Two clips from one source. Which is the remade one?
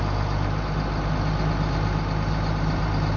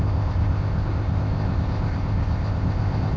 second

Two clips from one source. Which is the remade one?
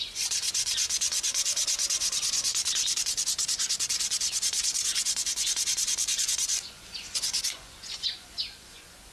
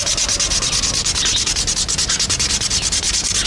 first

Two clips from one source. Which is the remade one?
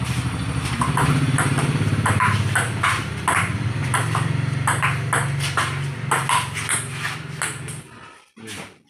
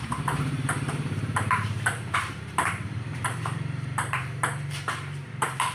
second